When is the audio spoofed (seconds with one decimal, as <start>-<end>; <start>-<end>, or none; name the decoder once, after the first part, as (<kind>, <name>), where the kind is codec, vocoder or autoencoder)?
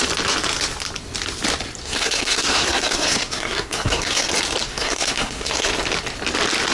1.8-4.3 (codec, SNAC); 4.7-5.7